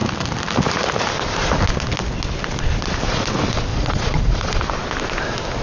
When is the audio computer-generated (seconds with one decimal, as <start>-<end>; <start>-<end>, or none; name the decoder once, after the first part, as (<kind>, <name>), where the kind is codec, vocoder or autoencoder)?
3.7-4.6 (vocoder, Vocos)